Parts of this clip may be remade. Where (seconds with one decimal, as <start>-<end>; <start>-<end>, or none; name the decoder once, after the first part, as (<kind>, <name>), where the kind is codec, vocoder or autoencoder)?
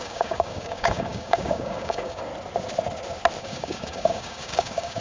0.0-2.3 (codec, DAC); 3.4-5.0